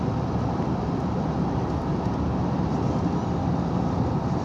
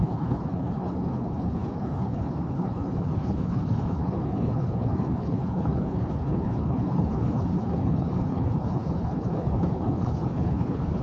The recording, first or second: first